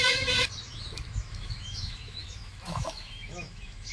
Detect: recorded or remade remade